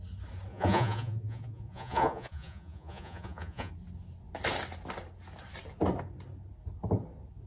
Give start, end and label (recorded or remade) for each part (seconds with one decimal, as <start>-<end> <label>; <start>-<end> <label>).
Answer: 0.0-0.5 recorded; 0.5-3.7 remade; 3.7-7.5 recorded